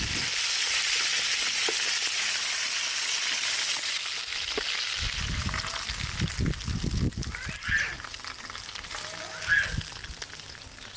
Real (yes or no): yes